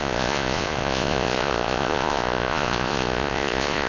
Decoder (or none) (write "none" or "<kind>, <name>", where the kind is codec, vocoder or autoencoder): vocoder, Vocos